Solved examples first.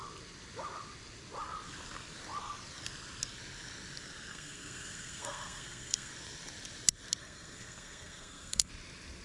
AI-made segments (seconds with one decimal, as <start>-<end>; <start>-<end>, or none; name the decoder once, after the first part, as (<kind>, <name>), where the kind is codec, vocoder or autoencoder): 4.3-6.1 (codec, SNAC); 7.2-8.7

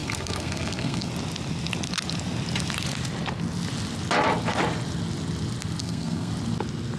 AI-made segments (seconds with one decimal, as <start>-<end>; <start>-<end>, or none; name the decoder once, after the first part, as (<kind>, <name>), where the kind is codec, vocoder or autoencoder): 0.0-1.1 (codec, SNAC); 5.8-6.3

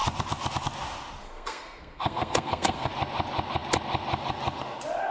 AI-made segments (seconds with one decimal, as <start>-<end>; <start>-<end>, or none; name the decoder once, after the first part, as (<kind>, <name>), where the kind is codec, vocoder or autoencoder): 1.2-2.9 (codec, SNAC)

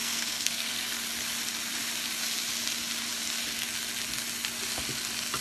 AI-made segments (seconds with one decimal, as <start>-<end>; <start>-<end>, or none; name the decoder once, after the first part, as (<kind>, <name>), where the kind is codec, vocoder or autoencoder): 0.0-0.8 (codec, SNAC)